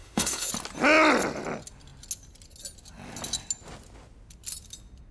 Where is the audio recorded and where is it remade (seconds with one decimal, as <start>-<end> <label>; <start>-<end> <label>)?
0.0-0.5 remade; 0.5-5.1 recorded